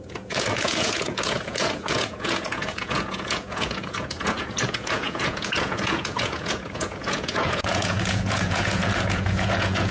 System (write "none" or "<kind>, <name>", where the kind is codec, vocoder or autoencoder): vocoder, Vocos